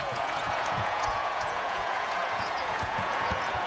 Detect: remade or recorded remade